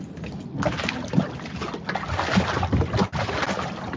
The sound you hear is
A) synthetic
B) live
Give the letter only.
B